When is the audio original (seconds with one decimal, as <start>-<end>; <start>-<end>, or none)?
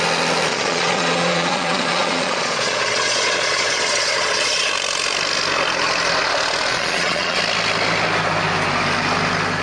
0.0-0.5; 4.7-6.7; 7.4-9.6